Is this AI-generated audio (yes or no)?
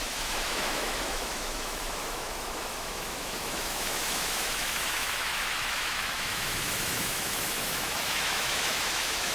yes